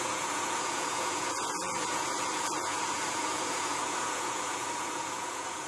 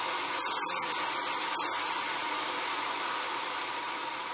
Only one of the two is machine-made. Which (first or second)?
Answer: first